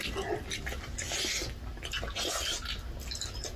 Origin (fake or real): real